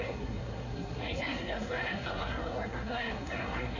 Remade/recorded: remade